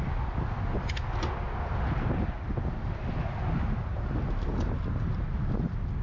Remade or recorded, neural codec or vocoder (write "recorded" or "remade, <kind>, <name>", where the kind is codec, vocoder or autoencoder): recorded